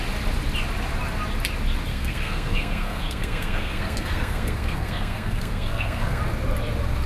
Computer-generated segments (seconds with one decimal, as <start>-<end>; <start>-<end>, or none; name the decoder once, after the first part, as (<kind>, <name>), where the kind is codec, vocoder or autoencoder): 1.9-6.2 (codec, SNAC)